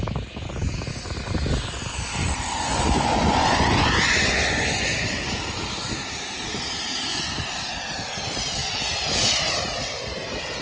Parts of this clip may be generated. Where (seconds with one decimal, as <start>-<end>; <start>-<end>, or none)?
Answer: 2.2-5.3; 7.1-7.7